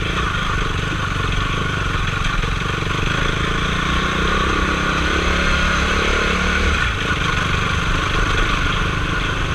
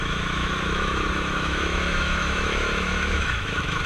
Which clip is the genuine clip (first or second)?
first